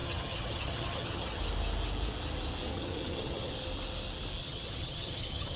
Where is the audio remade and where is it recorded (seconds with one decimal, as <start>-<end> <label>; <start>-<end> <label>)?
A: 0.0-1.4 remade; 1.4-2.7 recorded; 2.7-3.5 remade; 3.5-4.4 recorded; 4.4-5.6 remade